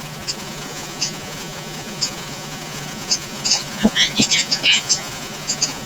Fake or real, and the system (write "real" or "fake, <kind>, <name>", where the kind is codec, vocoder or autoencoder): fake, vocoder, Vocos